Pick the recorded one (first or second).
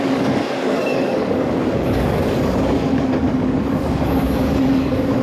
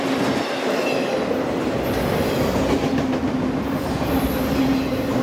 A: second